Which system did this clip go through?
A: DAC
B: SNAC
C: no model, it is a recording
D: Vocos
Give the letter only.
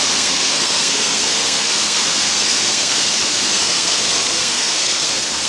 B